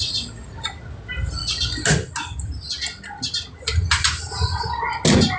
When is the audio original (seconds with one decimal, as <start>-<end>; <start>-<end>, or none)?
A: 0.0-5.4